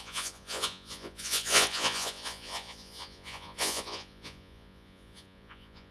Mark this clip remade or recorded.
remade